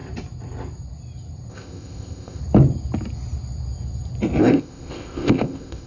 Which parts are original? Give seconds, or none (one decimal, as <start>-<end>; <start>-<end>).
0.0-1.5; 2.4-4.4